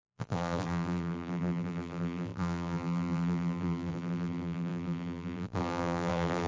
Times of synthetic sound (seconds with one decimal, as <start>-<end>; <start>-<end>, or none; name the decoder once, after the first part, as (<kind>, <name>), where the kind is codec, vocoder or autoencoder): 0.0-6.5 (vocoder, BigVGAN v2)